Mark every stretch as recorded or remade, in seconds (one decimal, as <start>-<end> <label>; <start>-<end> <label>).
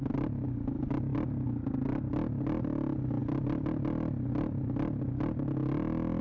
0.0-3.2 recorded; 3.2-6.2 remade